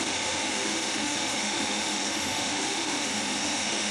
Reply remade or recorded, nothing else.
remade